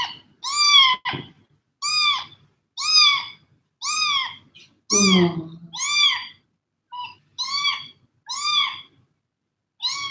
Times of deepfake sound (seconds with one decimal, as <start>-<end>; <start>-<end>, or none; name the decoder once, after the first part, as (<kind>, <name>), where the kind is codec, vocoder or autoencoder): none